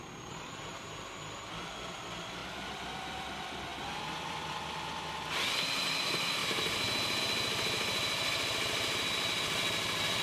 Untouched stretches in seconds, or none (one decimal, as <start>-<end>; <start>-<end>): 6.4-7.2